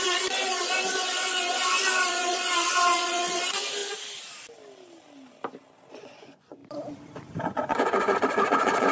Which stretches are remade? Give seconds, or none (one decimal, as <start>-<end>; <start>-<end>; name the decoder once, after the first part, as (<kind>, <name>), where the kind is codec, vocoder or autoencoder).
0.0-3.8 (vocoder, Vocos); 5.9-6.6; 7.4-8.9